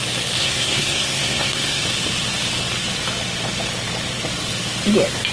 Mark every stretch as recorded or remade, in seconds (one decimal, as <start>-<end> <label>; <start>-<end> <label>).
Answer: 0.0-0.4 recorded; 0.4-1.8 remade; 1.8-5.3 recorded